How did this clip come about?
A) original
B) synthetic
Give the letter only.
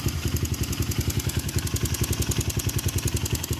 A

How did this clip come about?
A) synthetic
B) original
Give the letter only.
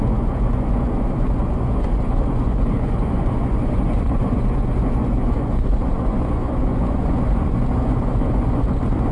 A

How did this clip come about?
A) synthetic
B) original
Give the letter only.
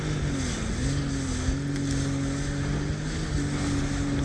B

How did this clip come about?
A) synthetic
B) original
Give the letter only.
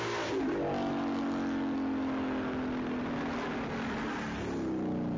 B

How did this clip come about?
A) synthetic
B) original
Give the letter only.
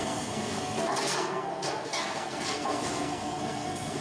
A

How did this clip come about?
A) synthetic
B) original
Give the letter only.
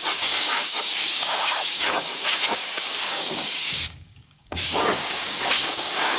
A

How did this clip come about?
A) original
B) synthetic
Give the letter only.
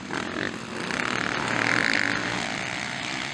A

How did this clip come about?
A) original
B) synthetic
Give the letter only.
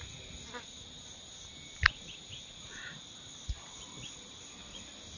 A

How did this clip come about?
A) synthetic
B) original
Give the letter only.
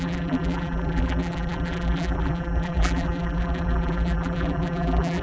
A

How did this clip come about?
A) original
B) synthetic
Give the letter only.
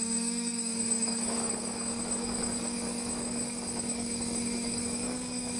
B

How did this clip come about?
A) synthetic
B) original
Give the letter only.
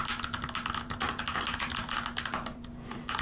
B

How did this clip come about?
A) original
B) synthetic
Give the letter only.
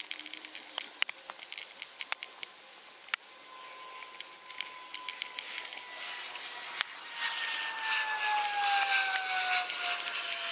A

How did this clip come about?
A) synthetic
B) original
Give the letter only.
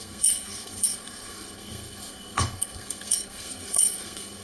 A